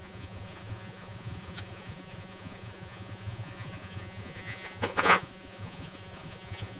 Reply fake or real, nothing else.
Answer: fake